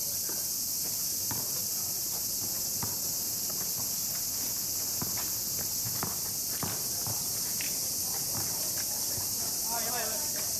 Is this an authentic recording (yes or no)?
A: yes